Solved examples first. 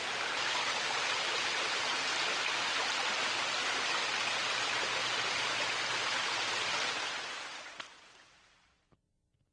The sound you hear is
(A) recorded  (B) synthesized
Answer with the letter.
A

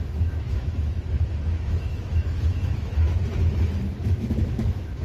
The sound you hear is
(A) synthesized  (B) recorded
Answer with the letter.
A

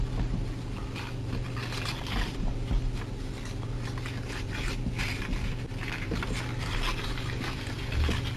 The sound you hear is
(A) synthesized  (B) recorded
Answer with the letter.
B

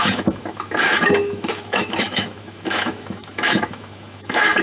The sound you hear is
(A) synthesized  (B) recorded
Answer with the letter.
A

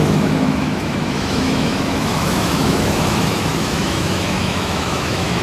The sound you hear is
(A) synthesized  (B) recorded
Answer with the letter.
A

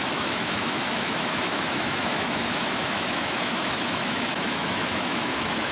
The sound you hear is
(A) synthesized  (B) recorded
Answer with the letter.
A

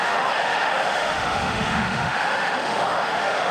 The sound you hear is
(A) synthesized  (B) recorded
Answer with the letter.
A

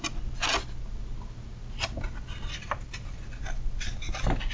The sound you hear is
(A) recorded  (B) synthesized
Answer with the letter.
A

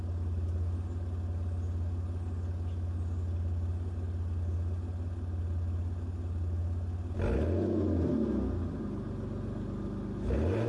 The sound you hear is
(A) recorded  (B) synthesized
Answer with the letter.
A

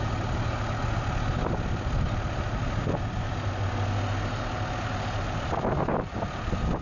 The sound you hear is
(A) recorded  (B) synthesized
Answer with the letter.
A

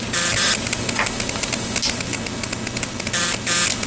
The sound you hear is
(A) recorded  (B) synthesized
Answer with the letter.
A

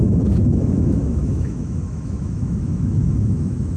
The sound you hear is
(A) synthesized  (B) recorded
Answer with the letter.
A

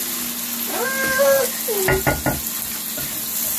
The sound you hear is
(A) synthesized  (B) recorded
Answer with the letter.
B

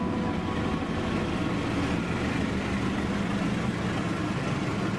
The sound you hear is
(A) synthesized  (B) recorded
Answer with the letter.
B